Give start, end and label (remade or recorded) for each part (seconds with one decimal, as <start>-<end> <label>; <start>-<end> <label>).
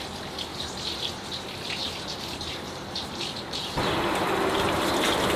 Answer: 0.0-0.5 recorded; 0.5-1.1 remade; 1.1-1.8 recorded; 1.8-5.0 remade; 5.0-5.4 recorded